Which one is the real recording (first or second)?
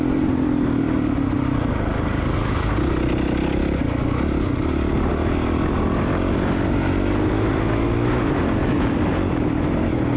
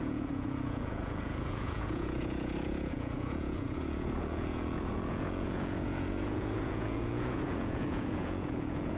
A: first